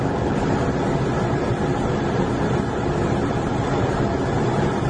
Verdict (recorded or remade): recorded